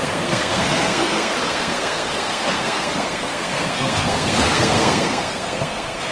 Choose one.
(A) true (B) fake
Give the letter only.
B